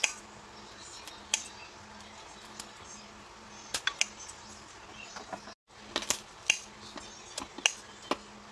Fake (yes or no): no